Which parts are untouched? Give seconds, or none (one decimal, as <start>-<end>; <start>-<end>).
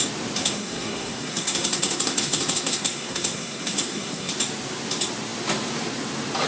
0.0-0.4; 4.3-6.5